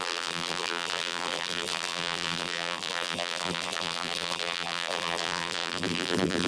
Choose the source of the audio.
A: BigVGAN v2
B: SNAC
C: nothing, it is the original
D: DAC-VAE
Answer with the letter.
A